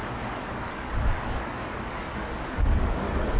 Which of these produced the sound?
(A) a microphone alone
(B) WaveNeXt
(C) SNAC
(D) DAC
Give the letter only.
D